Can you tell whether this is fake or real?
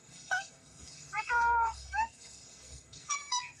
fake